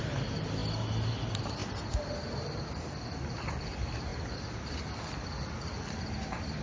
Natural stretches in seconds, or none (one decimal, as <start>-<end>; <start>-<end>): 0.0-6.6